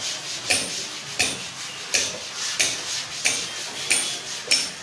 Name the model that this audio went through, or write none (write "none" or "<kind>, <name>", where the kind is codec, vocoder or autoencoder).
none